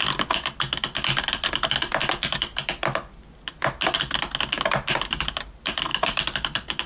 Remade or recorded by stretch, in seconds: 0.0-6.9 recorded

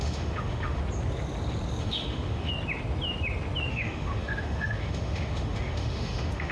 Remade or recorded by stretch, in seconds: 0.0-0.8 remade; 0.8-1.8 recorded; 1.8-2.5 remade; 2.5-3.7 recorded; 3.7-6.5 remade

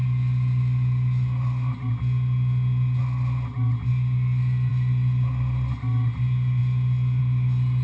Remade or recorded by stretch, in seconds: 0.0-7.8 recorded

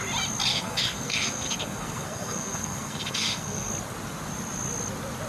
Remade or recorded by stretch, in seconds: 0.0-0.5 recorded; 0.5-3.7 remade; 3.7-5.3 recorded

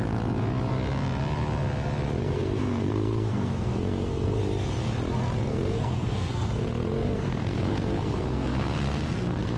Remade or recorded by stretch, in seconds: 0.0-2.2 recorded; 2.2-4.4 remade; 4.4-5.5 recorded; 5.5-9.6 remade

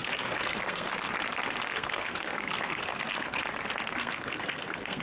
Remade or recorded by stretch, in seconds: 0.0-1.1 remade; 1.1-1.7 recorded; 1.7-3.4 remade; 3.4-4.0 recorded; 4.0-5.0 remade